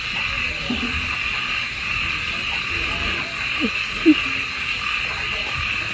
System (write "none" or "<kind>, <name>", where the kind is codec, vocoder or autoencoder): none